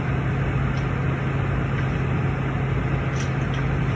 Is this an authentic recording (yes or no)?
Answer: yes